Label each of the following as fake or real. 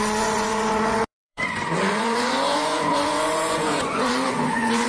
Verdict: fake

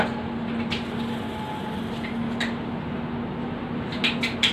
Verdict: real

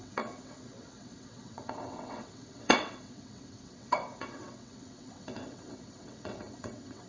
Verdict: fake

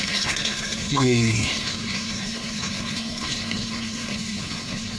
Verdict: fake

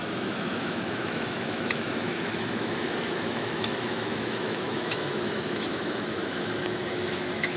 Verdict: fake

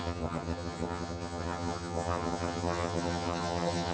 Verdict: fake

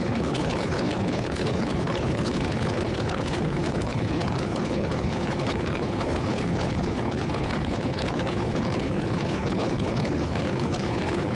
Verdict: fake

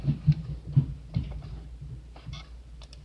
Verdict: fake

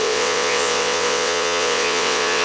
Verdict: fake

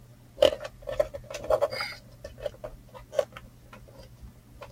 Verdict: real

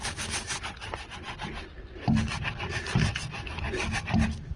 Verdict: real